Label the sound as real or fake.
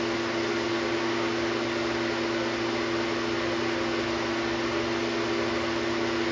real